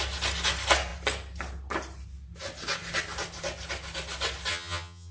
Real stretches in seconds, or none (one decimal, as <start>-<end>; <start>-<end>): 0.0-4.5